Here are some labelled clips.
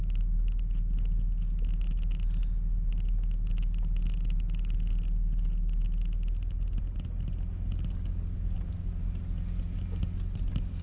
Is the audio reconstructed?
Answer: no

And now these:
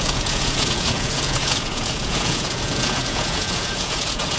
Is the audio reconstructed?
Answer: yes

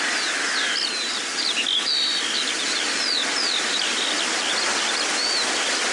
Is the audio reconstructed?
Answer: no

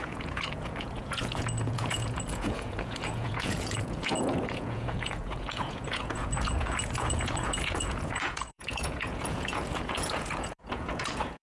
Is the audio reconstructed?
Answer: yes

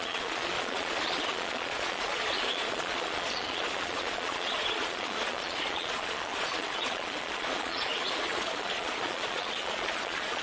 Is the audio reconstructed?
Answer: yes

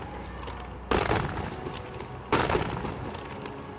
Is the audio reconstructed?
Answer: no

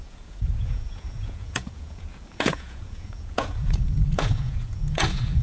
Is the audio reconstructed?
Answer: yes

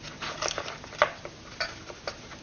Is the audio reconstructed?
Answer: no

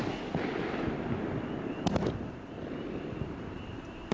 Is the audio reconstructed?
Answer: no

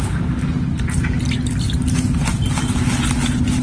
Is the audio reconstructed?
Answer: no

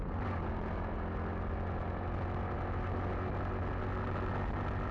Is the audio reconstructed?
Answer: no